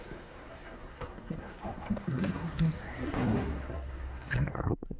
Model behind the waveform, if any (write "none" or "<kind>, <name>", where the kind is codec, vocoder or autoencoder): codec, SNAC